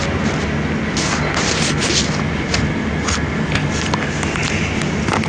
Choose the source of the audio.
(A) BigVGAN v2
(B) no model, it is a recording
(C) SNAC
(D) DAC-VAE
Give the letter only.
B